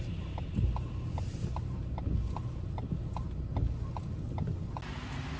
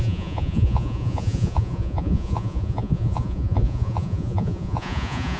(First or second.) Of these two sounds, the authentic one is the first